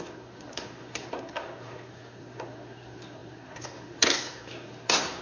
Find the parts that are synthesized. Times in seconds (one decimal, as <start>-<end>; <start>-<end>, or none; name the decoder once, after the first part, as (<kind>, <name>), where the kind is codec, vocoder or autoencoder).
0.0-5.2 (codec, SNAC)